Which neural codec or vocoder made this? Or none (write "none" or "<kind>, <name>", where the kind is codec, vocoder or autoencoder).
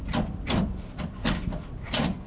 none